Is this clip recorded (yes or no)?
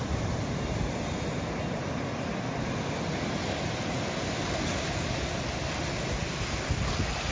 yes